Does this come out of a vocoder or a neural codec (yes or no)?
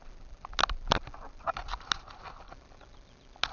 no